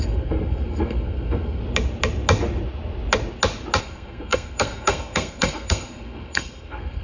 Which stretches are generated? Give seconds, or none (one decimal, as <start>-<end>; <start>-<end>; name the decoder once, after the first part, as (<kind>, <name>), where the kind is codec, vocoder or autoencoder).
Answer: 0.0-1.6 (codec, SNAC); 3.8-7.0